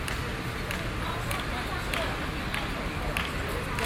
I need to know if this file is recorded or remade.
recorded